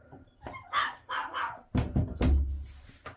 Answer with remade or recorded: recorded